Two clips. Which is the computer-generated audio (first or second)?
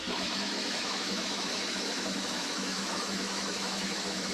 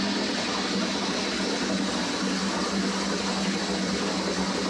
first